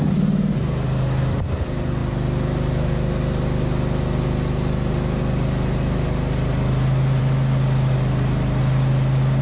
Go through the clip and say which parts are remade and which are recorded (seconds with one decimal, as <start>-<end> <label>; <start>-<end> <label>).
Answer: 0.0-9.4 recorded